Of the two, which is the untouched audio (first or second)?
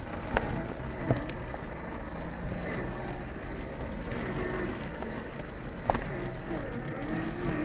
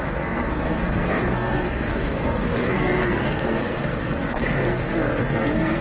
first